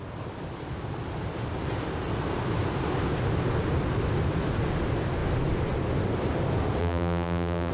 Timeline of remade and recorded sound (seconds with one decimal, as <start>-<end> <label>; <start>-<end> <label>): 0.0-6.8 recorded; 6.8-7.7 remade